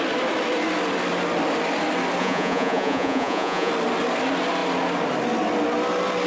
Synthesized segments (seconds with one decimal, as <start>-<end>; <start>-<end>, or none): 2.2-3.7